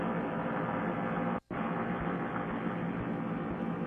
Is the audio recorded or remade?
recorded